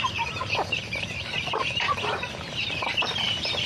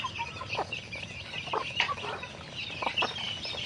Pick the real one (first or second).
second